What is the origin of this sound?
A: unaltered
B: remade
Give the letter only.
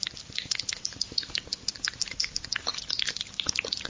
A